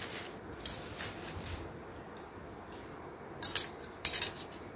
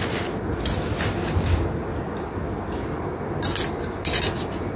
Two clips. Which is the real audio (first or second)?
second